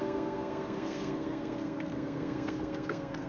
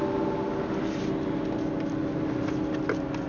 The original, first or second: second